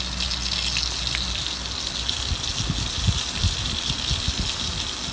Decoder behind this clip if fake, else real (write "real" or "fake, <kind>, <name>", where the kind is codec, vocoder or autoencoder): real